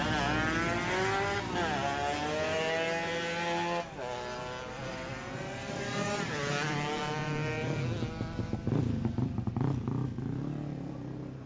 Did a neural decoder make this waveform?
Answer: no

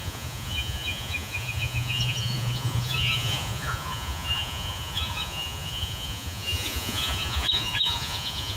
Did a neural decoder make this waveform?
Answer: yes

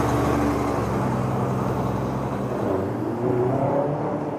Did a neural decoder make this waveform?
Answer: no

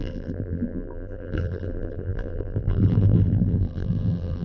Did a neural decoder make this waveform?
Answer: yes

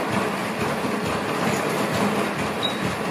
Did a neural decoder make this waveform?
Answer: no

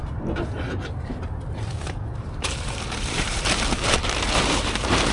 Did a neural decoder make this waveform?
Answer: yes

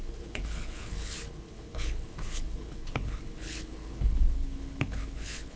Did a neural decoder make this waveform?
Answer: yes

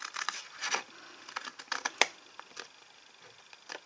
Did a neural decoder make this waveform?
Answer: yes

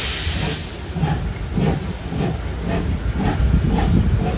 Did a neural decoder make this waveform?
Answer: no